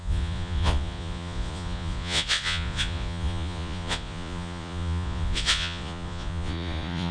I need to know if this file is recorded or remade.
remade